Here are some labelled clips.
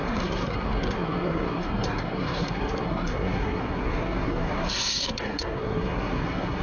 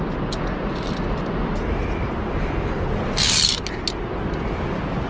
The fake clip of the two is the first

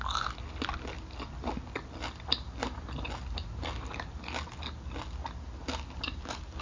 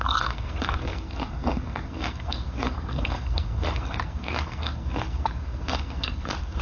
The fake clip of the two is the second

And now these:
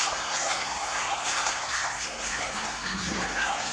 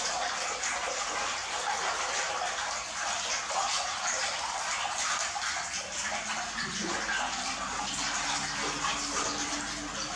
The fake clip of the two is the first